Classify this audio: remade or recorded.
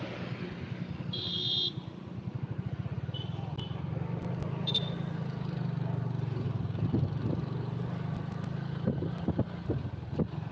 recorded